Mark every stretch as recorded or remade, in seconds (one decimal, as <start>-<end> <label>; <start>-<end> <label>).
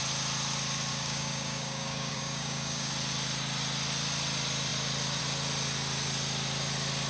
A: 0.0-0.9 recorded; 0.9-2.9 remade; 2.9-7.1 recorded